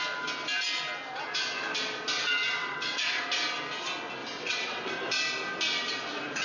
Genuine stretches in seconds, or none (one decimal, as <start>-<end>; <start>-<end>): 0.0-2.6; 3.2-4.2; 4.9-6.4